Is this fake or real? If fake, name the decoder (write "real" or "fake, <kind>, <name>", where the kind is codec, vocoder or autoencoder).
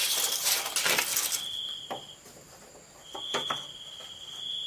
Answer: real